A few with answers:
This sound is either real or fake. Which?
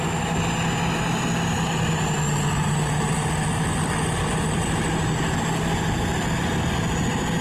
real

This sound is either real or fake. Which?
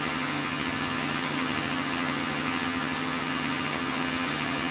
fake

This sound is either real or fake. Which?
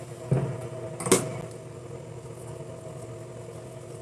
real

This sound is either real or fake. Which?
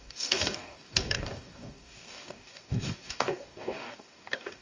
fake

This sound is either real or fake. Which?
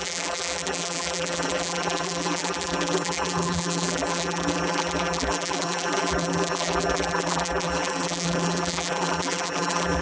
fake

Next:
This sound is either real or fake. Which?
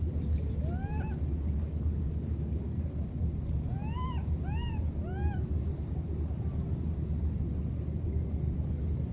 real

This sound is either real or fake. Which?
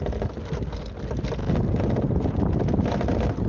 real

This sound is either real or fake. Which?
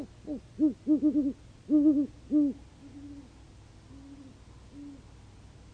real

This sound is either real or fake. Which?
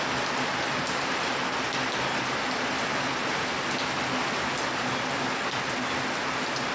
real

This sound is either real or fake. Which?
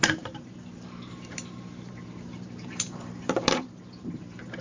fake